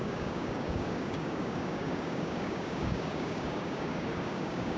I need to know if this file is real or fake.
fake